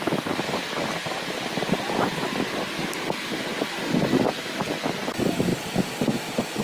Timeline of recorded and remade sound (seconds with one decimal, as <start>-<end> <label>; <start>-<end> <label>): 0.0-1.0 recorded; 1.0-2.3 remade; 2.3-6.6 recorded

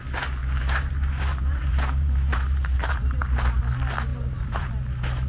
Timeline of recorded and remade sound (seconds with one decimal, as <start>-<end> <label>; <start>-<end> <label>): 0.0-0.4 recorded; 0.4-3.6 remade; 3.6-4.1 recorded; 4.1-5.3 remade